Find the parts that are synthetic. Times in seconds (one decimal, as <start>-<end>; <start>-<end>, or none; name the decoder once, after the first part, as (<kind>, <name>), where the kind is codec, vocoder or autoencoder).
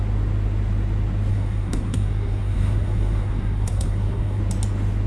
1.3-4.4 (codec, SNAC)